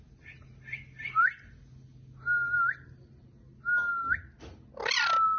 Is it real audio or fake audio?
real